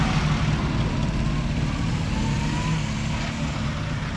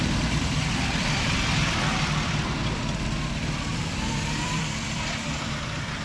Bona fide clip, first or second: first